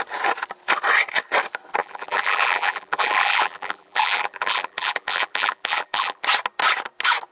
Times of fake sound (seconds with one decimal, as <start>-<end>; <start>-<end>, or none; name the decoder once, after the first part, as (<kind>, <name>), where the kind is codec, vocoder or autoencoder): 1.8-6.2 (vocoder, BigVGAN v2)